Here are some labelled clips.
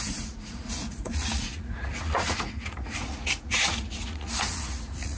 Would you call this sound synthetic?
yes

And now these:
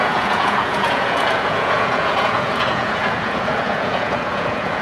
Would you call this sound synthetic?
yes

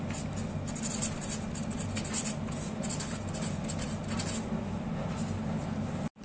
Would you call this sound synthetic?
no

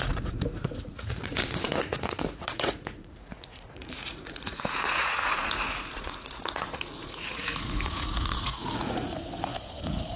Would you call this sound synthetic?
yes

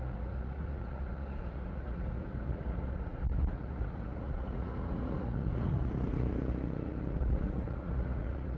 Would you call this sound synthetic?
yes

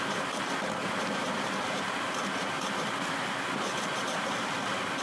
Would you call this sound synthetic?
no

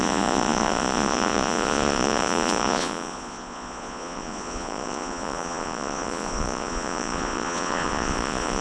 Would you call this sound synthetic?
yes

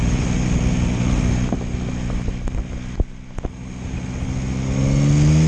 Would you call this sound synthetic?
no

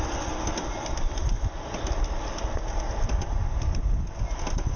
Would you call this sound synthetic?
no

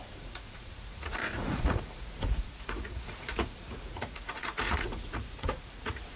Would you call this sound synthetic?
yes